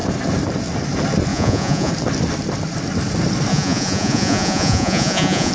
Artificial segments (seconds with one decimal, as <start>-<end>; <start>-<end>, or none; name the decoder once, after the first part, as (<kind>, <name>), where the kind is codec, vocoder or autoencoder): 1.3-1.9 (vocoder, Vocos); 3.5-5.5